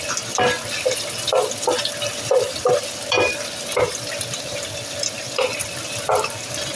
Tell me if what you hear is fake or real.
real